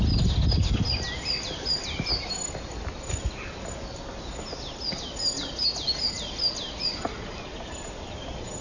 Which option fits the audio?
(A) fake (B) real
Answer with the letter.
B